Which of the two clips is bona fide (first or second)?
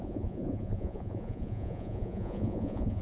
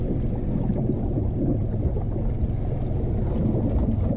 second